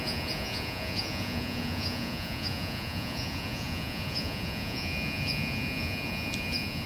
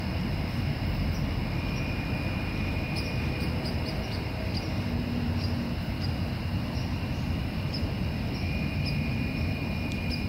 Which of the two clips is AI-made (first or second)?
first